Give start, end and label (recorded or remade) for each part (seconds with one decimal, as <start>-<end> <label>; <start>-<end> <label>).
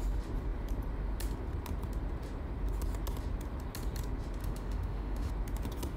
0.0-4.4 recorded; 4.4-5.3 remade; 5.3-6.0 recorded